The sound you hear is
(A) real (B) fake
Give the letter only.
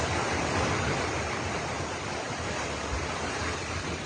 A